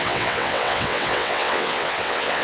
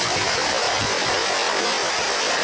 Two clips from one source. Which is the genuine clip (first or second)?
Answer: second